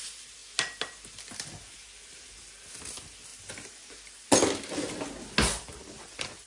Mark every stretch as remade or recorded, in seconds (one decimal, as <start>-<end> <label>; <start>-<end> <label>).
0.0-6.5 recorded